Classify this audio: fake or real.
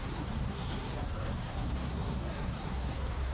fake